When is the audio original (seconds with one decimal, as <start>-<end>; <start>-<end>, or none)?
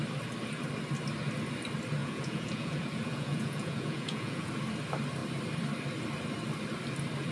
0.0-2.0; 4.5-7.3